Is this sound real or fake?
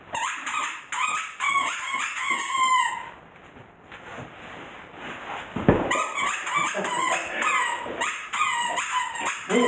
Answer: real